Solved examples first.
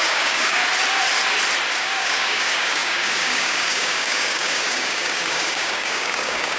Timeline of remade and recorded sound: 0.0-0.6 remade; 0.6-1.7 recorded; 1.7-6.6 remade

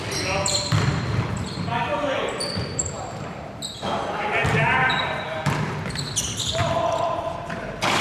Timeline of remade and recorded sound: 0.0-8.0 remade

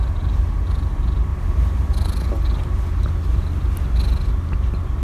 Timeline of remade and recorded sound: 0.0-5.0 recorded